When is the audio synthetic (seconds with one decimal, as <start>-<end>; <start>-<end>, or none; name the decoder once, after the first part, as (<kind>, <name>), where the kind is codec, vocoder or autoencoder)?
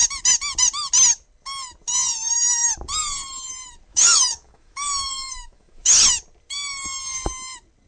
3.9-6.0 (autoencoder, DAC-VAE)